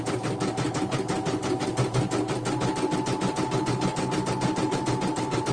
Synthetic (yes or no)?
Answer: no